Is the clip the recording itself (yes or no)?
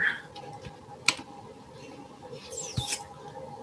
yes